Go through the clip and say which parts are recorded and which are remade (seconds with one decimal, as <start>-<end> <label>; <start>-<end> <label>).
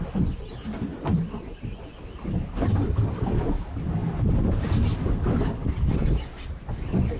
0.0-7.2 recorded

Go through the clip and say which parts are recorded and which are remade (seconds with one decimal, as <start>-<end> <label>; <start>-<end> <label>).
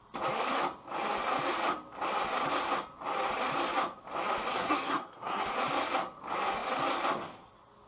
0.0-4.5 recorded; 4.5-5.4 remade; 5.4-7.9 recorded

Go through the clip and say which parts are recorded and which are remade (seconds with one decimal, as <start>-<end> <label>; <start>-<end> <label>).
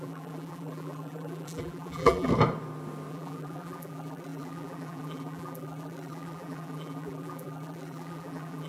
0.0-2.3 remade; 2.3-3.1 recorded; 3.1-8.7 remade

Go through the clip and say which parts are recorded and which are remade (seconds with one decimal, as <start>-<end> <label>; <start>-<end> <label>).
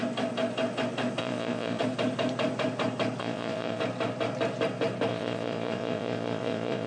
0.0-1.2 recorded; 1.2-1.8 remade; 1.8-3.2 recorded; 3.2-3.8 remade; 3.8-5.1 recorded; 5.1-6.9 remade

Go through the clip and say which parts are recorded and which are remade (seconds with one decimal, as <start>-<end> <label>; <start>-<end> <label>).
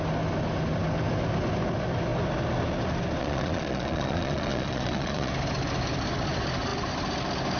0.0-3.2 recorded; 3.2-5.3 remade; 5.3-7.6 recorded